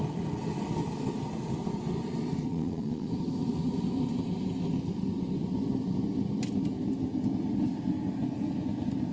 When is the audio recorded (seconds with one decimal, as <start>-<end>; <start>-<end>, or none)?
0.0-2.5; 3.1-9.1